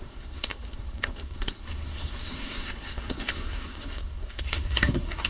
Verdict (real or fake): fake